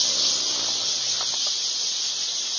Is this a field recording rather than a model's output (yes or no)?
yes